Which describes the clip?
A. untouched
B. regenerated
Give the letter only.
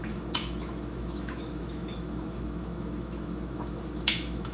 B